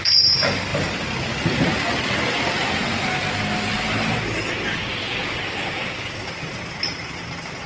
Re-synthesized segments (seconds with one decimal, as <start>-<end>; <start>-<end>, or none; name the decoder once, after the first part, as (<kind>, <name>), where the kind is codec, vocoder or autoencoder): 4.8-6.3 (codec, DAC)